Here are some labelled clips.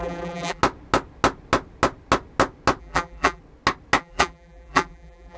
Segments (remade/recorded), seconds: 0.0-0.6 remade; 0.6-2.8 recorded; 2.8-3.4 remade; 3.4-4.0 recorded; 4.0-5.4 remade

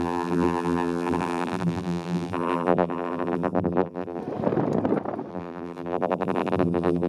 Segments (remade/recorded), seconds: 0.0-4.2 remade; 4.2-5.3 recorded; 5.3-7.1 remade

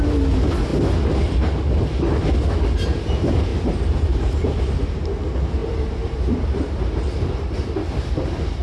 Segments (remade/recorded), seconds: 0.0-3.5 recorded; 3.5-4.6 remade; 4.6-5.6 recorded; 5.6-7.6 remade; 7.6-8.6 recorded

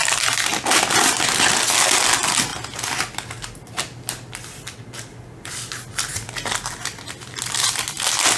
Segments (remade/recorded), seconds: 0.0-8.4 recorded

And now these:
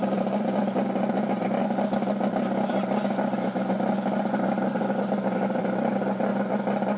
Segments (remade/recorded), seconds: 0.0-1.6 remade; 1.6-2.3 recorded; 2.3-6.3 remade; 6.3-7.0 recorded